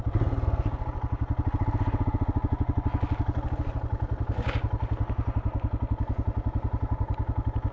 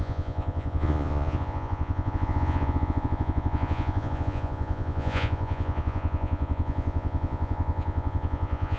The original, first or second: first